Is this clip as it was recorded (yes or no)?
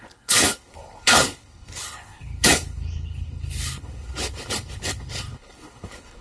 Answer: no